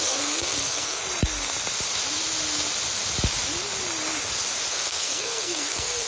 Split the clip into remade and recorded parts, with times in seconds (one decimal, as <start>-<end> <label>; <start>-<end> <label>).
0.0-1.0 remade; 1.0-4.7 recorded; 4.7-6.1 remade